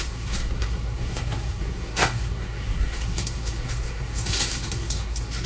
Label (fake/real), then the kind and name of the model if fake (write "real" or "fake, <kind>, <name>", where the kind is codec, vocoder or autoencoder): fake, codec, SNAC